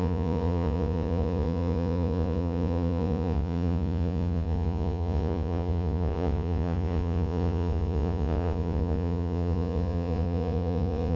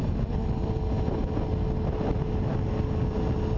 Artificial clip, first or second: first